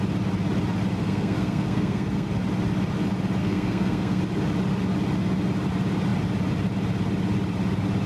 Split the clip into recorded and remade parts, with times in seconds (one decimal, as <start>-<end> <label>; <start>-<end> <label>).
0.0-1.0 recorded; 1.0-2.3 remade; 2.3-3.4 recorded; 3.4-4.2 remade; 4.2-8.1 recorded